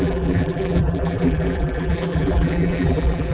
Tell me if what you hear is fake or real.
fake